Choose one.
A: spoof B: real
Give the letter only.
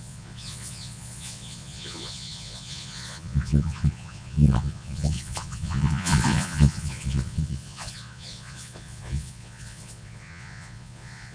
A